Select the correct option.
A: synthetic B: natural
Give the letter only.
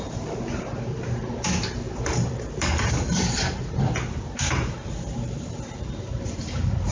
A